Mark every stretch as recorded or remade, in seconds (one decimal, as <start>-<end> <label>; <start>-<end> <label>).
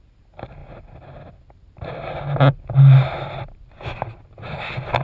0.0-5.0 recorded